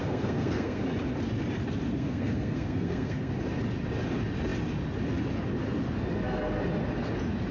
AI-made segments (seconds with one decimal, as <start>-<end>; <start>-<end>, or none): 0.0-0.8; 1.9-3.3